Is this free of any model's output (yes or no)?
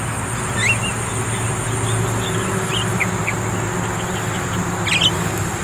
yes